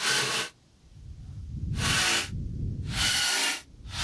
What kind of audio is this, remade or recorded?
recorded